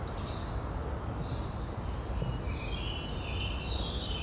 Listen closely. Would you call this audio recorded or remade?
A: recorded